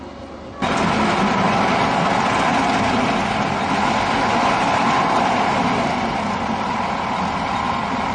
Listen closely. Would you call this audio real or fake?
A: real